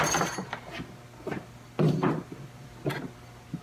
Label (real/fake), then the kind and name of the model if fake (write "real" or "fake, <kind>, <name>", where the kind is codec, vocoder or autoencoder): real